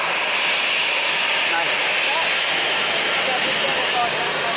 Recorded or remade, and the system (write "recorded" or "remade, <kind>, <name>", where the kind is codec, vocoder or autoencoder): recorded